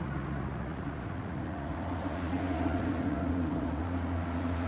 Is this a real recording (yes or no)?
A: no